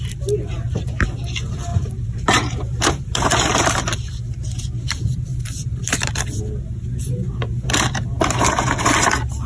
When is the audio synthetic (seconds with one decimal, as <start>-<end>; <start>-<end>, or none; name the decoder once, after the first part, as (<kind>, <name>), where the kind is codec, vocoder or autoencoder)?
1.7-6.1 (vocoder, BigVGAN v2)